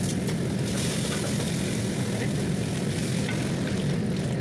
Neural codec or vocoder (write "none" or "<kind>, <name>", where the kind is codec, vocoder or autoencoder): none